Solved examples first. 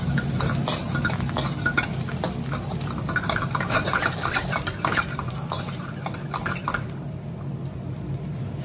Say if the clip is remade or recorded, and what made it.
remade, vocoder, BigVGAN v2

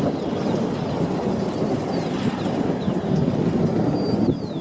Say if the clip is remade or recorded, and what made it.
recorded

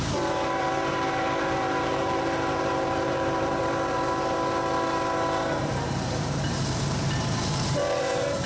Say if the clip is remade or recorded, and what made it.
remade, vocoder, BigVGAN v2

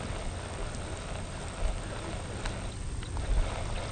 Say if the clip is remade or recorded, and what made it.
recorded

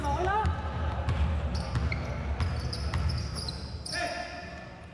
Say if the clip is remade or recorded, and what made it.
recorded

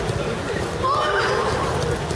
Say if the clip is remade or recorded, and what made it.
recorded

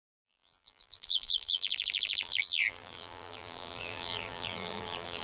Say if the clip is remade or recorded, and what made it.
remade, vocoder, BigVGAN v2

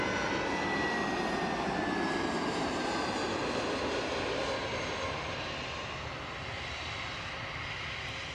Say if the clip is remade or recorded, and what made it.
recorded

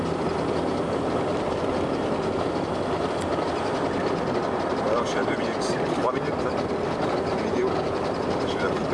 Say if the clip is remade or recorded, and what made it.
remade, vocoder, BigVGAN v2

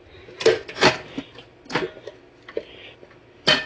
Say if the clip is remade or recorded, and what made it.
recorded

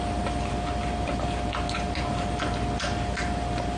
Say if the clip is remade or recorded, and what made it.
recorded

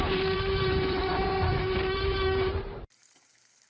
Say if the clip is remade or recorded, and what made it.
remade, vocoder, BigVGAN v2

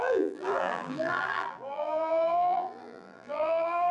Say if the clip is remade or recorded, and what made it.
remade, vocoder, BigVGAN v2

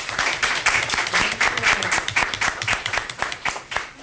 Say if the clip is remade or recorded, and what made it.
remade, vocoder, BigVGAN v2